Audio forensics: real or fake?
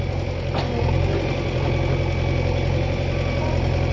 real